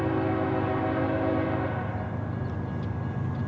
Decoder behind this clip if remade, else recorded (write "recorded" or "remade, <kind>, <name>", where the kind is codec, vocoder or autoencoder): recorded